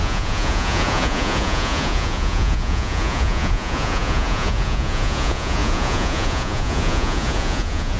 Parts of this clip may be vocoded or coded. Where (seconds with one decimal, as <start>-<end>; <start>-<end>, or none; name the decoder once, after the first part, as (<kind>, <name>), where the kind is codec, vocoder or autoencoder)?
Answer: 0.0-8.0 (vocoder, Vocos)